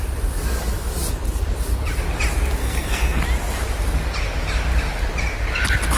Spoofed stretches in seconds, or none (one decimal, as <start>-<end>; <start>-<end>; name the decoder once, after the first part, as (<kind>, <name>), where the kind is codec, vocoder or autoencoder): 2.6-3.2 (codec, SNAC)